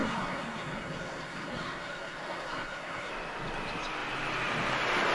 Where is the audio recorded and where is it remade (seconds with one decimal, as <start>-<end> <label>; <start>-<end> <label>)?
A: 0.0-3.1 remade; 3.1-5.1 recorded